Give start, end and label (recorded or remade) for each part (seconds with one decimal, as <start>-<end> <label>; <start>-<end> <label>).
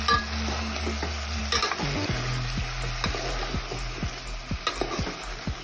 0.0-5.6 recorded